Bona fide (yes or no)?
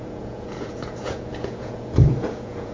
no